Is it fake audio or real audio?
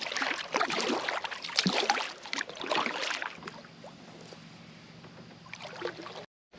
real